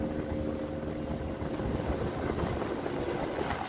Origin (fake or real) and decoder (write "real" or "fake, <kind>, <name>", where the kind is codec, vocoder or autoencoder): real